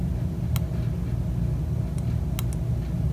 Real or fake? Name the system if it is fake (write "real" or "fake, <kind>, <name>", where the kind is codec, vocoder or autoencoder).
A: real